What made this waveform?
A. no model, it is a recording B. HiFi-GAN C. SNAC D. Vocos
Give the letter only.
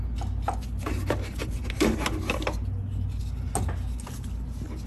A